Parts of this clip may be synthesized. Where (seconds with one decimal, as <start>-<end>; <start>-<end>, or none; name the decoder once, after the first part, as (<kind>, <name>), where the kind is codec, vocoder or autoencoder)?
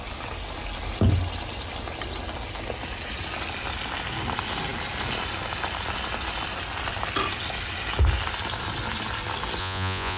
9.6-10.2 (vocoder, Vocos)